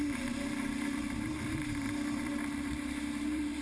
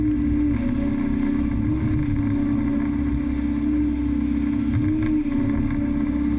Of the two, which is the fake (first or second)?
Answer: first